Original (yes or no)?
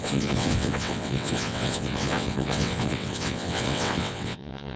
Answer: no